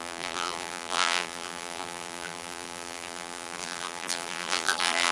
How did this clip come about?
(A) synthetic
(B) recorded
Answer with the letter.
A